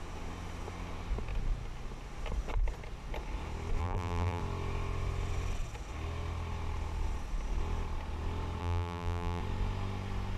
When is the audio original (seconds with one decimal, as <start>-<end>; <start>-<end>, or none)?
0.0-3.8; 4.4-8.6; 9.4-10.4